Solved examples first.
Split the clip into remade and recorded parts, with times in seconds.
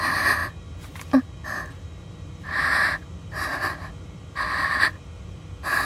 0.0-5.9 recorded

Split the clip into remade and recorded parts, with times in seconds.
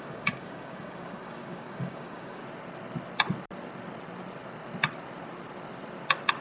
0.0-2.4 remade; 2.4-6.4 recorded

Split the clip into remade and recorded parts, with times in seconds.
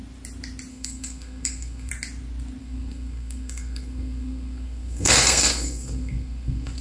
0.0-0.7 recorded; 0.7-1.9 remade; 1.9-2.6 recorded; 2.6-6.8 remade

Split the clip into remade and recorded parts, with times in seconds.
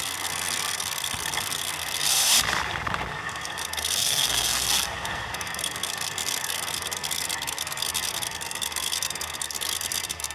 0.0-2.3 remade; 2.3-3.2 recorded; 3.2-10.3 remade